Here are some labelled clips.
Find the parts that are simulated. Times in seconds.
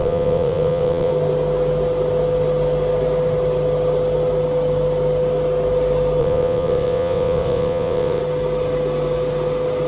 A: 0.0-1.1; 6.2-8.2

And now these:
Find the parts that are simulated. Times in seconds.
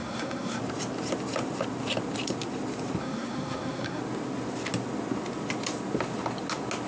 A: 0.0-0.6; 3.0-4.0